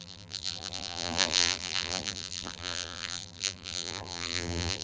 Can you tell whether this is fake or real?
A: fake